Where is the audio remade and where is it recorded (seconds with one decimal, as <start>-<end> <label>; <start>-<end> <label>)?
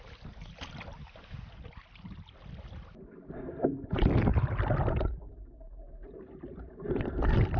0.0-7.6 recorded